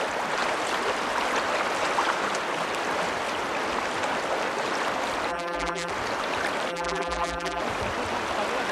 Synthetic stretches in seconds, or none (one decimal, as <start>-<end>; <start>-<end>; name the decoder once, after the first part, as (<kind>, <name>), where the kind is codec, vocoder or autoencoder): 5.3-5.9 (vocoder, BigVGAN v2); 6.7-7.6